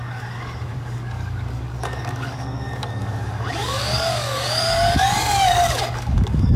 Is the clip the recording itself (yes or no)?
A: no